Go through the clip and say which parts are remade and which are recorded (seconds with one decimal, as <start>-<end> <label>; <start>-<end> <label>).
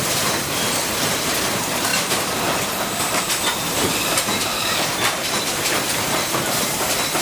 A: 0.0-7.2 remade